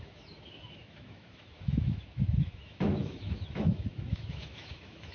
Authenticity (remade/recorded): remade